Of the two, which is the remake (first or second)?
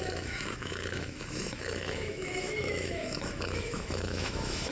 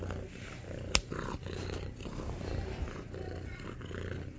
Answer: first